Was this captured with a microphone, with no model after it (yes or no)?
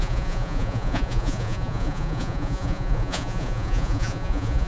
no